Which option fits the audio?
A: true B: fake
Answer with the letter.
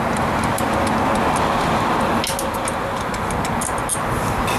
A